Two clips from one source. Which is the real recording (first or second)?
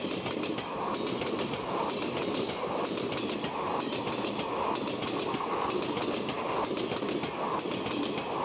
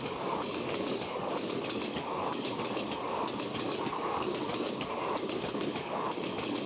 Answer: first